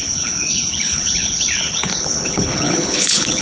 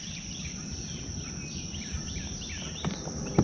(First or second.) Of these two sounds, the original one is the second